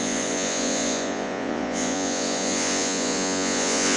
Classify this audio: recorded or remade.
remade